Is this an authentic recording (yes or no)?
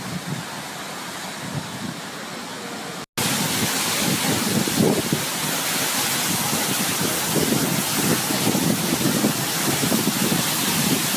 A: yes